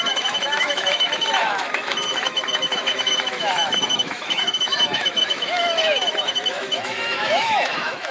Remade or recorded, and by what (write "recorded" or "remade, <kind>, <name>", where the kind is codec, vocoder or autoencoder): remade, autoencoder, DAC-VAE